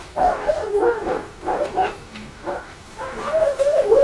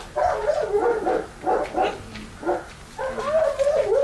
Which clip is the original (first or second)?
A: second